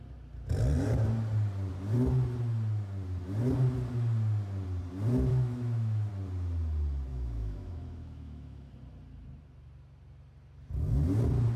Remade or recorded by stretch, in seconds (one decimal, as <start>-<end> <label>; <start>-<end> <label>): 0.0-5.3 recorded; 5.3-6.1 remade; 6.1-7.1 recorded; 7.1-8.7 remade; 8.7-11.6 recorded